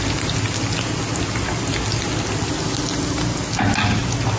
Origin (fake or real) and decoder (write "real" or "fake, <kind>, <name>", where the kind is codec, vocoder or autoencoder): real